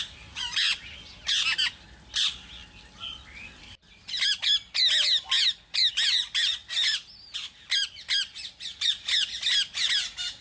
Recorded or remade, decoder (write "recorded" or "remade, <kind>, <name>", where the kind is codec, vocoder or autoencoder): recorded